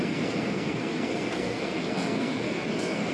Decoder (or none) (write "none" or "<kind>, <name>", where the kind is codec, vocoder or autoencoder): codec, SNAC